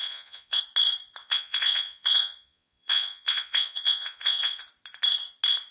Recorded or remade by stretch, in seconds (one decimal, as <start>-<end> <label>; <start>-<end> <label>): 0.0-0.6 remade; 0.6-1.2 recorded; 1.2-4.6 remade; 4.6-5.7 recorded